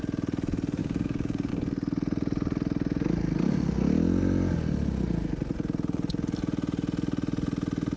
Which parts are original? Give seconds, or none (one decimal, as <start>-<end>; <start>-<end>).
0.0-0.8; 1.5-8.0